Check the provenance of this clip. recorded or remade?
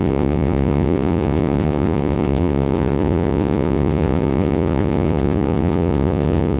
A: remade